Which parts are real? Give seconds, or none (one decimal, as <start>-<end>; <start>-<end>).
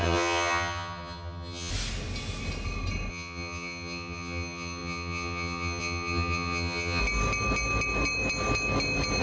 1.7-3.1; 7.0-9.2